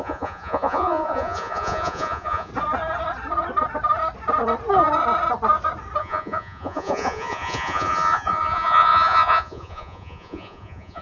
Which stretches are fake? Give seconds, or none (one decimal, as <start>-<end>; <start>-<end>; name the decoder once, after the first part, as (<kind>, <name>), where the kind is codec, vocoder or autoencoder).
0.0-2.5 (vocoder, Vocos); 6.0-11.0